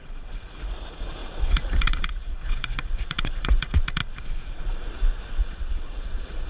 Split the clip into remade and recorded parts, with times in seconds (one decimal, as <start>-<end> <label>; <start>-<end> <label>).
0.0-4.0 remade; 4.0-5.4 recorded; 5.4-6.5 remade